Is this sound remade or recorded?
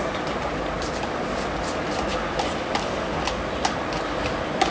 recorded